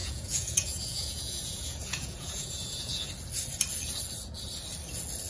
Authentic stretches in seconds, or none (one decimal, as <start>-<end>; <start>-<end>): 3.1-5.3